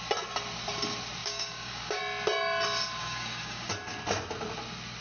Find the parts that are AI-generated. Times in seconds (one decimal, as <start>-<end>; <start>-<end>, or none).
1.2-2.0; 3.0-3.7